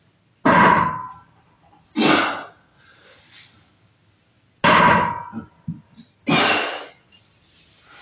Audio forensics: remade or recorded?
recorded